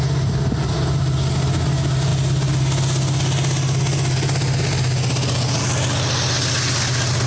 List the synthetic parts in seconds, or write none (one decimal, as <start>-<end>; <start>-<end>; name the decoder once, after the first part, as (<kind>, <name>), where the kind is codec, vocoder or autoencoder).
none